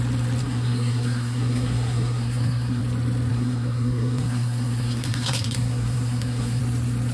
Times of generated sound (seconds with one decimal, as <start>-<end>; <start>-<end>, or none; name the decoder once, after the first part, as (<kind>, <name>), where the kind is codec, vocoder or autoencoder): 0.4-2.8 (codec, SNAC); 3.3-6.6